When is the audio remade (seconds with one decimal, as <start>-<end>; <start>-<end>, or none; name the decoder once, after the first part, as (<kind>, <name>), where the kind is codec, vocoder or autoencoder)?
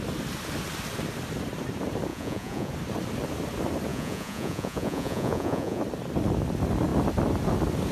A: 2.1-2.7 (vocoder, Vocos); 3.9-5.8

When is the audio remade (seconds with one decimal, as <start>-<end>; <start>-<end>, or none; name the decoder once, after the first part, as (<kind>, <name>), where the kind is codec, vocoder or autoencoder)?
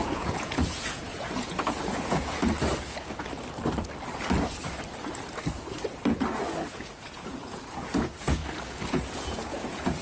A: 0.0-2.4 (vocoder, Vocos); 6.7-8.4; 8.9-10.0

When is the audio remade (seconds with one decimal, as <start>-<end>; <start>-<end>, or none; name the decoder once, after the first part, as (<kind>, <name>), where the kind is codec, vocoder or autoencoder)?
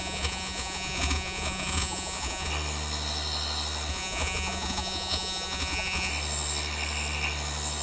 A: 0.0-2.5 (vocoder, Vocos); 3.9-6.1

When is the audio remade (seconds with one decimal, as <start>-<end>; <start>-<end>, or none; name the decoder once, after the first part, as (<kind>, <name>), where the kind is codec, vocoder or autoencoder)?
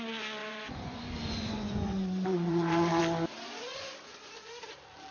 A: 0.4-3.0 (vocoder, Vocos); 3.7-4.5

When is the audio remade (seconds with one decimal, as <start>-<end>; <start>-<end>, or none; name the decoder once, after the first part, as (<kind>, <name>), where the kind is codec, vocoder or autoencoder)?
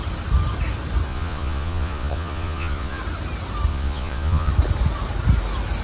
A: 1.1-3.0 (vocoder, Vocos); 3.7-4.5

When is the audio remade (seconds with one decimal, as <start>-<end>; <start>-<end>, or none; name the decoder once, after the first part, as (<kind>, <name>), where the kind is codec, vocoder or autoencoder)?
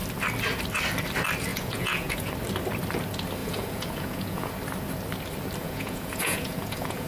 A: 1.5-2.3 (vocoder, Vocos); 3.4-4.5; 5.6-7.1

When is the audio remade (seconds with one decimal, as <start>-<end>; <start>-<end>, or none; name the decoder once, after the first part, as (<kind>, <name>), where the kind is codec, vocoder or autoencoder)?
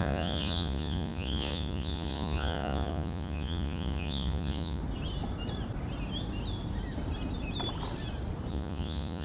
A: 0.0-4.8 (vocoder, Vocos); 8.5-9.2